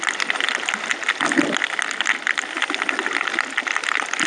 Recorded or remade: recorded